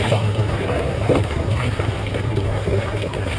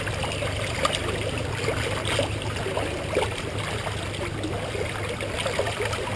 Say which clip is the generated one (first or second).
first